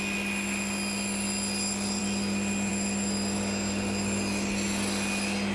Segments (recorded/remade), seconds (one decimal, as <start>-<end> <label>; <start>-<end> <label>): 0.0-5.5 recorded